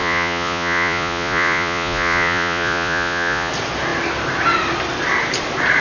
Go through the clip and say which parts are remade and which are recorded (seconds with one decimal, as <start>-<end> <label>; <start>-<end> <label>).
0.0-3.5 remade; 3.5-5.8 recorded